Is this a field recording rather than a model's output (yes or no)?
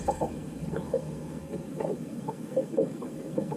no